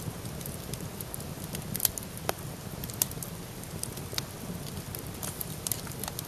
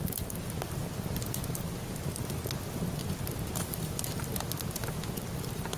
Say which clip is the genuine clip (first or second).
second